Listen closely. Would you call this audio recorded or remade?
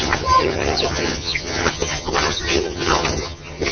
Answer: remade